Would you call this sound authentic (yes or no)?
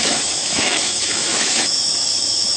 no